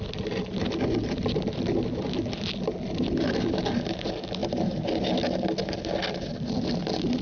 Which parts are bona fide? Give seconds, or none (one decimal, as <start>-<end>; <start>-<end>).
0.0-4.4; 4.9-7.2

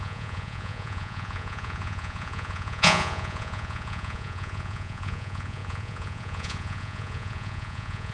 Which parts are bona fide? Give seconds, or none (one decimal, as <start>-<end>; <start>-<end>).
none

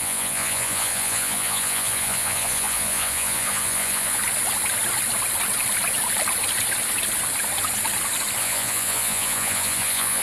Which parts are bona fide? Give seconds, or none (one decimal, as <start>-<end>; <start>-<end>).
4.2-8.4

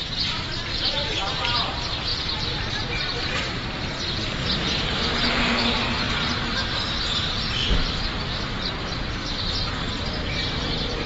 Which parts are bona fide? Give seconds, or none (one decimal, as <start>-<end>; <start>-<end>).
0.0-4.4; 5.2-7.6; 9.0-11.1